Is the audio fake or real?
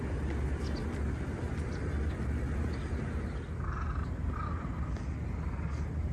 real